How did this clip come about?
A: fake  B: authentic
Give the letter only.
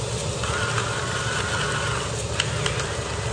B